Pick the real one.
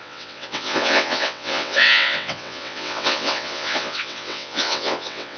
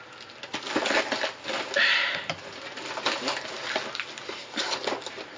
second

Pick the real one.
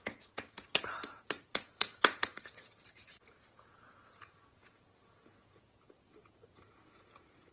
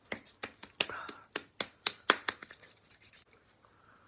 second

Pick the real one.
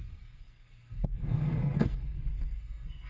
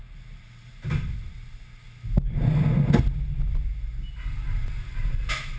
second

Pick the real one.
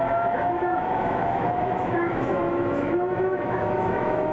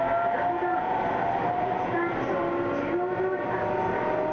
second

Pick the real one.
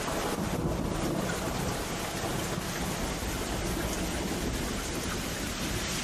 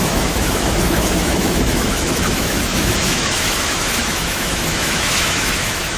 first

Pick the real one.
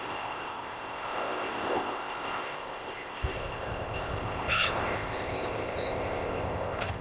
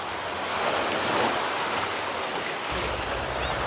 second